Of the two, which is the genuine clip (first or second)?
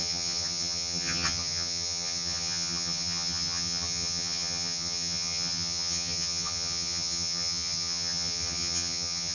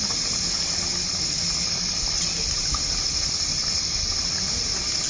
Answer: second